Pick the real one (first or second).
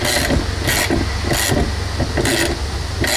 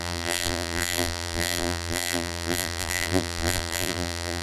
first